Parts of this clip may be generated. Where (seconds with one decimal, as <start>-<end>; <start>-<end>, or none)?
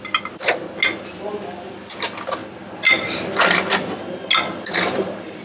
none